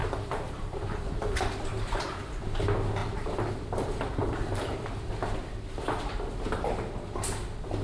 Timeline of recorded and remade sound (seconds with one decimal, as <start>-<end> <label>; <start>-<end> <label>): 0.0-2.3 remade; 2.3-3.0 recorded; 3.0-5.1 remade; 5.1-7.8 recorded